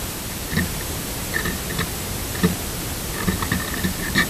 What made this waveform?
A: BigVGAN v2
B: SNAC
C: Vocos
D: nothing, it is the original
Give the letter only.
A